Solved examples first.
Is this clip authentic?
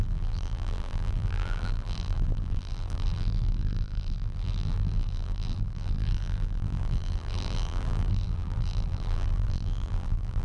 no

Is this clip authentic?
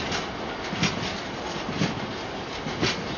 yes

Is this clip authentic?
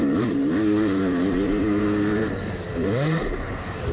no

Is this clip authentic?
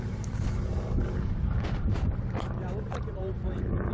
no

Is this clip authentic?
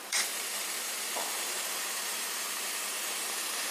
no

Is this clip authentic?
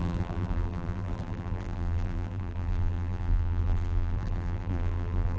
no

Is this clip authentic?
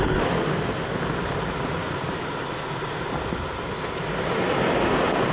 yes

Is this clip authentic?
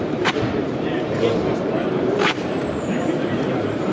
no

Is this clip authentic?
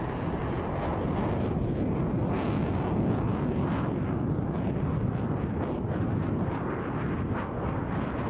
yes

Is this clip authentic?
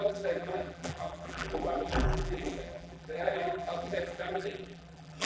no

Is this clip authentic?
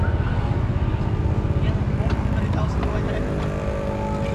yes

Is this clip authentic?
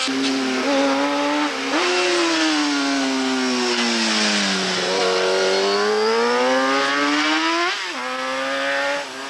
yes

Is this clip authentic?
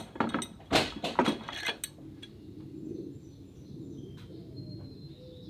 yes